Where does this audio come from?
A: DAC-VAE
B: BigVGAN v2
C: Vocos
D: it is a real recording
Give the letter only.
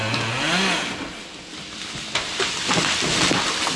D